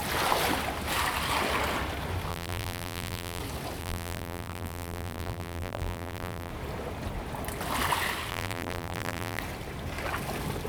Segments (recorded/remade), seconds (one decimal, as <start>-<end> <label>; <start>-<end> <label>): 0.0-2.3 recorded; 2.3-3.4 remade; 3.4-3.8 recorded; 3.8-6.5 remade; 6.5-8.3 recorded; 8.3-9.4 remade; 9.4-10.7 recorded